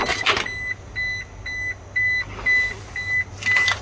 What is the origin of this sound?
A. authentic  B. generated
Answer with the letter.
A